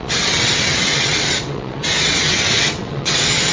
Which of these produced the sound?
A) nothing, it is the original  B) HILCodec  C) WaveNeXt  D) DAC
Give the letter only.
C